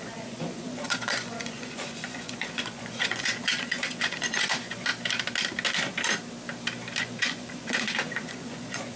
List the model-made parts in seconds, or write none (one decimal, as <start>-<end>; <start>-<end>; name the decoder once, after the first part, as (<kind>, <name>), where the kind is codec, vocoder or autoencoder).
0.0-4.9 (vocoder, Vocos); 7.0-9.0